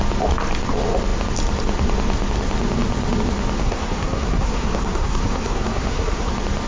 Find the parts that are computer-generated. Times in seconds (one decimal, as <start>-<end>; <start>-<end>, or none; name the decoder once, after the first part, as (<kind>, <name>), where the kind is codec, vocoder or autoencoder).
3.6-6.3 (codec, SNAC)